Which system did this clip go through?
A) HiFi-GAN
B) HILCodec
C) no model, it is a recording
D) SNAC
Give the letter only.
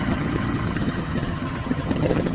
A